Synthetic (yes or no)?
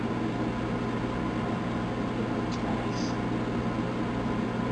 no